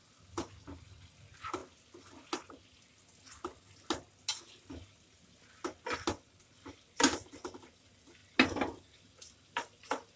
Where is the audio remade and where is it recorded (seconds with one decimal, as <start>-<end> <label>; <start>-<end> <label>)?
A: 0.0-10.2 recorded